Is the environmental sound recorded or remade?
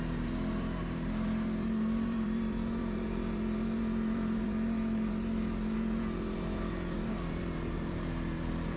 remade